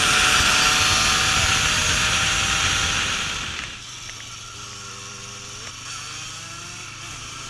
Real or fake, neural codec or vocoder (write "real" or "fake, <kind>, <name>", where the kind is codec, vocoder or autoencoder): real